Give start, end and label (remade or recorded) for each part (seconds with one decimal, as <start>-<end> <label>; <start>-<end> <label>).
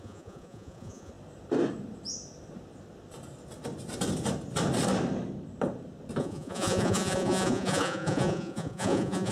0.0-1.1 remade; 1.1-6.2 recorded; 6.2-9.3 remade